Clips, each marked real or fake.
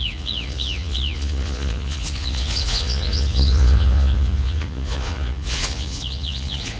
fake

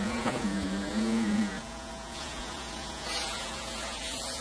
fake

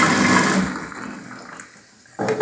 real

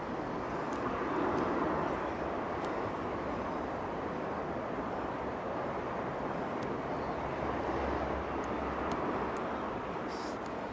real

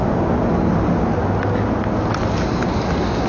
real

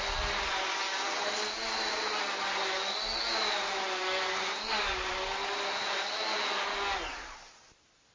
real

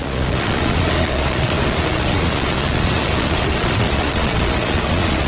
fake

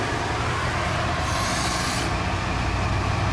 real